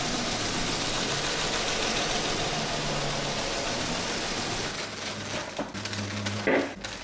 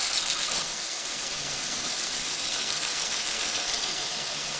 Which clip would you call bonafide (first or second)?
first